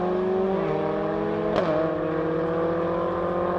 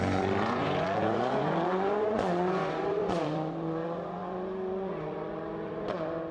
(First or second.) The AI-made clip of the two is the second